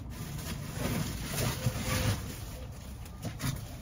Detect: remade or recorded recorded